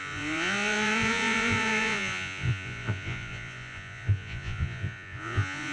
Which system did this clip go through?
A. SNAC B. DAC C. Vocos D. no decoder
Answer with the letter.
C